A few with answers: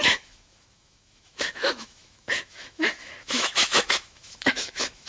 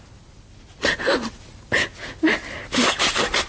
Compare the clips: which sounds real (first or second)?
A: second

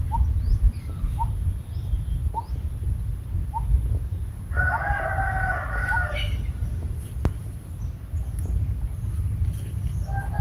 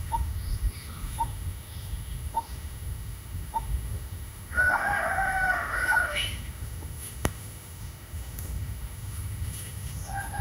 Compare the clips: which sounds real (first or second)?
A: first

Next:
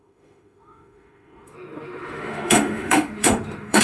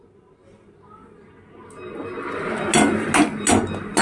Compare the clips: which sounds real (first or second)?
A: second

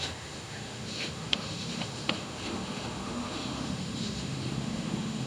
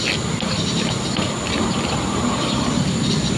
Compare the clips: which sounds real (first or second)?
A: second